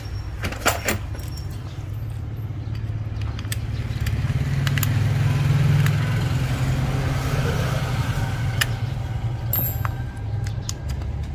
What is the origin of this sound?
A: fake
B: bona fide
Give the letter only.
B